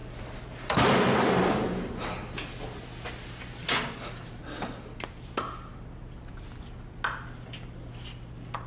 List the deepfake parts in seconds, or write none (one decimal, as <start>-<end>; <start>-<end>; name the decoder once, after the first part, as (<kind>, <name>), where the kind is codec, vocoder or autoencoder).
none